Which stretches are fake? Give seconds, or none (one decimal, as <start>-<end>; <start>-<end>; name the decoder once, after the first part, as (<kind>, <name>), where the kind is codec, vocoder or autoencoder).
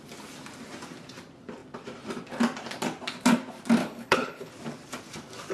3.8-4.5 (codec, HILCodec)